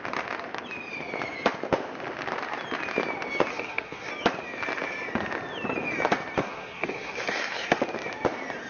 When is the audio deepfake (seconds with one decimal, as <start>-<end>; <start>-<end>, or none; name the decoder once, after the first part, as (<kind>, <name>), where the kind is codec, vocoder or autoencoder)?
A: 3.5-4.1 (codec, SNAC); 6.4-7.8